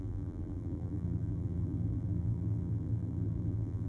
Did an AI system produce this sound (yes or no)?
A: yes